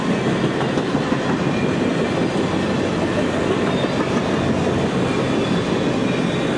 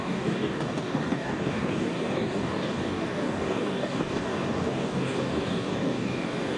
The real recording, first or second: first